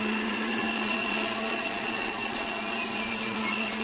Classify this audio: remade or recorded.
remade